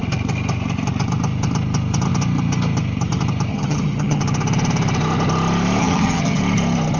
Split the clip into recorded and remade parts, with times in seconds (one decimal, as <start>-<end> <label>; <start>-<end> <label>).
0.0-3.5 recorded; 3.5-4.2 remade; 4.2-5.8 recorded; 5.8-6.4 remade; 6.4-7.0 recorded